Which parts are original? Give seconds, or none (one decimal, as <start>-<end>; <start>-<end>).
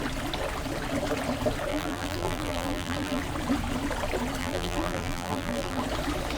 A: 0.0-1.7; 3.2-4.4; 5.8-6.4